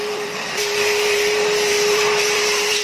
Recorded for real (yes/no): no